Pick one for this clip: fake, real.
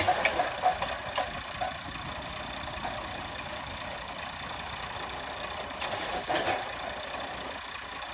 real